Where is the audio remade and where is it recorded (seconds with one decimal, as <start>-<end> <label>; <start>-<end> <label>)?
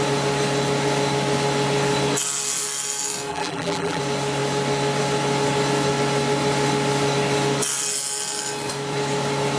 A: 0.0-3.3 recorded; 3.3-4.0 remade; 4.0-9.6 recorded